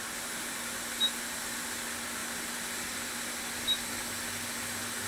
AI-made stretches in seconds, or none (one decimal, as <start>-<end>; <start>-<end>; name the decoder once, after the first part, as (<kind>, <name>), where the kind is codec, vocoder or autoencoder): none

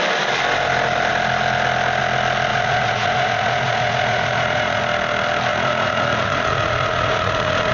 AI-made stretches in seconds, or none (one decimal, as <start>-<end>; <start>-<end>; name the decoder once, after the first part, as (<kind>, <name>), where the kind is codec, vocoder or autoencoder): 2.5-4.8 (vocoder, Vocos); 5.5-7.7

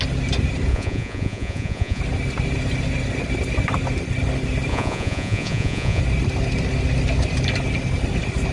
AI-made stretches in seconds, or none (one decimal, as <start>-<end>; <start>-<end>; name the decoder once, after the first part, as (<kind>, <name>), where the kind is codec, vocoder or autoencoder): 0.7-2.0 (vocoder, Vocos); 4.7-6.0

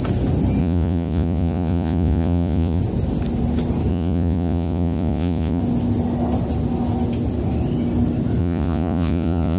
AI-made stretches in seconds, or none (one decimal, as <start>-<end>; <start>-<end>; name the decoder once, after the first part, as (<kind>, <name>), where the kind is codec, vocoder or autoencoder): 0.6-2.8 (vocoder, Vocos); 3.9-5.6; 8.4-9.6